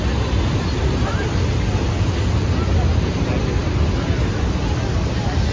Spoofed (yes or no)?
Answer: no